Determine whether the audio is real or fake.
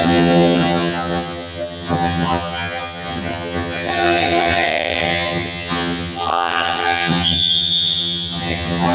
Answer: fake